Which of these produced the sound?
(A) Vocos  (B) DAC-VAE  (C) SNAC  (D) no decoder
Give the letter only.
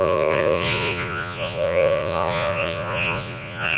A